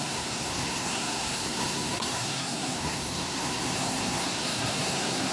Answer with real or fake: fake